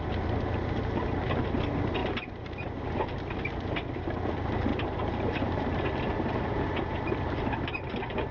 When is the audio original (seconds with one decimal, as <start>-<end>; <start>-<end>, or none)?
0.0-2.0; 2.9-4.7